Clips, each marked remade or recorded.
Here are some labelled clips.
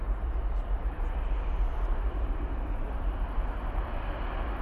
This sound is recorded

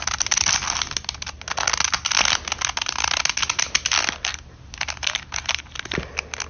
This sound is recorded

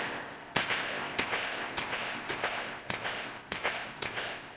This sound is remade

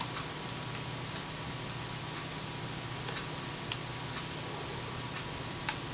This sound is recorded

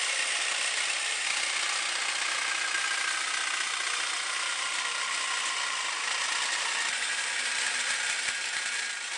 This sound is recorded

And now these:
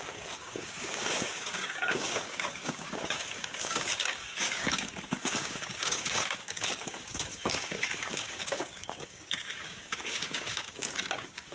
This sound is remade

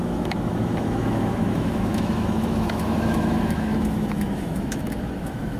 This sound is remade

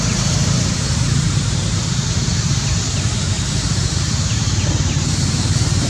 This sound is remade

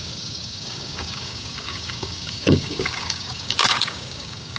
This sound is remade